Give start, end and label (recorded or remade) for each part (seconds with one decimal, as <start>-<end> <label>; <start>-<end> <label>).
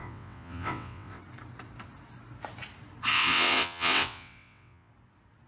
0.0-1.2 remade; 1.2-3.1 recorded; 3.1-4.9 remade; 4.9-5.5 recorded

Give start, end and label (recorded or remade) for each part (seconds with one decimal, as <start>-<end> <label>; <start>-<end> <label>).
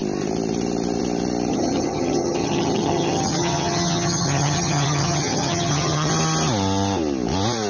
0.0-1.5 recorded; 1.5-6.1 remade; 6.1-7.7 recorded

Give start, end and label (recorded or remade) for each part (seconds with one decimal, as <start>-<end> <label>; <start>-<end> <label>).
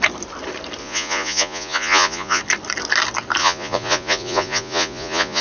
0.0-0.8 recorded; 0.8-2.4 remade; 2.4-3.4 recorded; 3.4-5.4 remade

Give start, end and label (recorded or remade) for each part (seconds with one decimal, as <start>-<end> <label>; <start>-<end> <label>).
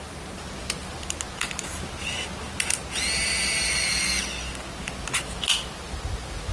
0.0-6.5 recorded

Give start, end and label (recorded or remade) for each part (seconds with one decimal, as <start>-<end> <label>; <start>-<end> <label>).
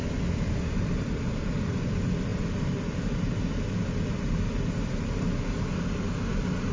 0.0-6.7 recorded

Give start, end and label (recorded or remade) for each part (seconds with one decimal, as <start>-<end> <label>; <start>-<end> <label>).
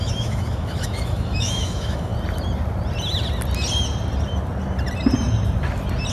0.0-2.1 remade; 2.1-6.1 recorded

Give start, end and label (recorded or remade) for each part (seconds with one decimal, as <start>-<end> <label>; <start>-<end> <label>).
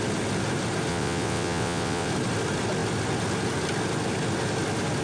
0.0-0.9 recorded; 0.9-2.1 remade; 2.1-5.0 recorded